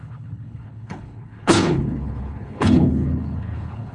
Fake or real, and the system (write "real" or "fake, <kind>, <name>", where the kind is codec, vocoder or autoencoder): fake, codec, HILCodec